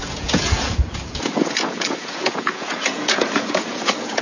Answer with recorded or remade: remade